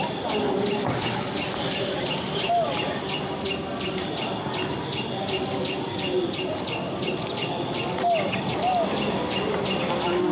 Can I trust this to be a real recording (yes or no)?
yes